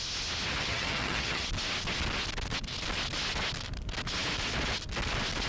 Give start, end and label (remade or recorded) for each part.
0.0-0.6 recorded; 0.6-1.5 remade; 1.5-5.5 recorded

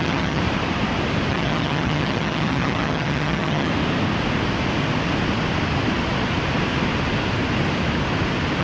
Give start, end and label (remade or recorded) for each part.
0.0-0.4 remade; 0.4-1.3 recorded; 1.3-3.7 remade; 3.7-8.6 recorded